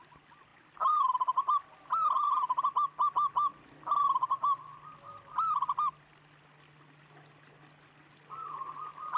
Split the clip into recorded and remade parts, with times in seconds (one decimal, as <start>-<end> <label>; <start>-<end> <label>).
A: 0.0-9.2 recorded